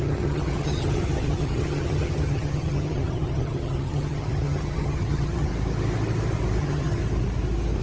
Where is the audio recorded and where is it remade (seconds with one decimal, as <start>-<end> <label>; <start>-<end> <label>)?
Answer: 0.0-5.5 remade; 5.5-6.6 recorded; 6.6-7.0 remade; 7.0-7.8 recorded

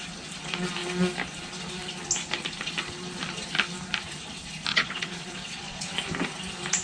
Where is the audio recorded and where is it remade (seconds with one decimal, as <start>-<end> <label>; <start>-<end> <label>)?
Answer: 0.0-4.7 recorded; 4.7-5.8 remade; 5.8-6.8 recorded

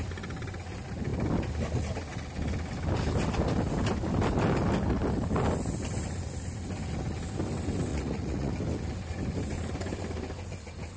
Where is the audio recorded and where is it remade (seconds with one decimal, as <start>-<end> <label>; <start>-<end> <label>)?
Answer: 0.0-7.9 recorded; 7.9-8.5 remade; 8.5-11.0 recorded

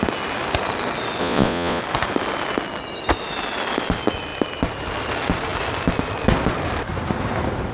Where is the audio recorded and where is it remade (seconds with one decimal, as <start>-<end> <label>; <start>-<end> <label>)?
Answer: 0.0-1.2 recorded; 1.2-1.8 remade; 1.8-7.7 recorded

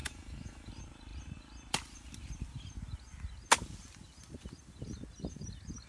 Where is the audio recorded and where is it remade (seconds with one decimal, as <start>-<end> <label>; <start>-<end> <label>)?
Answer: 0.0-0.7 remade; 0.7-5.9 recorded

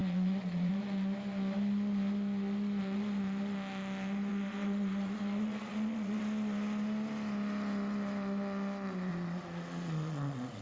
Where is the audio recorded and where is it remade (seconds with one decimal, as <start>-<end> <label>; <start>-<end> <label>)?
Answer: 0.0-0.7 remade; 0.7-4.3 recorded; 4.3-6.2 remade; 6.2-9.1 recorded; 9.1-10.6 remade

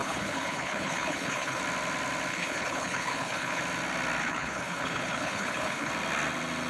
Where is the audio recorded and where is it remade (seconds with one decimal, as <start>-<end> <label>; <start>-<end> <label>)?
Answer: 0.0-1.6 remade; 1.6-2.3 recorded; 2.3-3.6 remade; 3.6-4.2 recorded; 4.2-5.9 remade; 5.9-6.7 recorded

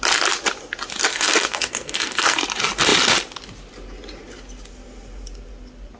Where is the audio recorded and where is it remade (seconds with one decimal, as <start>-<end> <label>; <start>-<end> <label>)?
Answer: 0.0-1.1 recorded; 1.1-2.4 remade; 2.4-6.0 recorded